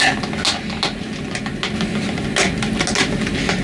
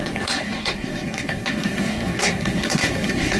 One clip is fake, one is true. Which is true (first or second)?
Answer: first